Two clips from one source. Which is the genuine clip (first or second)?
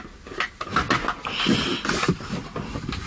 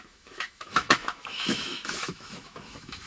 first